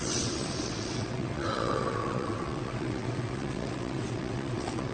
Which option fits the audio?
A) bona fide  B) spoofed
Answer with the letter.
B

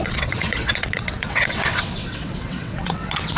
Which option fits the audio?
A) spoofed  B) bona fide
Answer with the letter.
A